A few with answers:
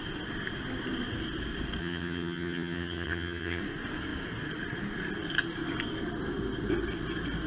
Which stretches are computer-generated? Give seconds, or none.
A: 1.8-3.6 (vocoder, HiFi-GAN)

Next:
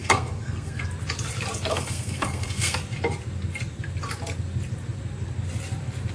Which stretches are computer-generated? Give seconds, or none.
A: 0.0-0.8 (codec, SNAC); 1.7-2.8